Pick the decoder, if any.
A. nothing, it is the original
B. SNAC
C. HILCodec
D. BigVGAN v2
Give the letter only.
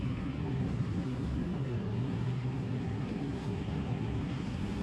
B